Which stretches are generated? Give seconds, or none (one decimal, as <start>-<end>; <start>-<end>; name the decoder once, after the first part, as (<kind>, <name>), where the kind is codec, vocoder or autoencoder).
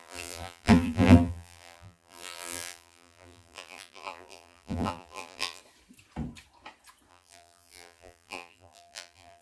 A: 0.0-5.6 (vocoder, BigVGAN v2); 7.1-9.4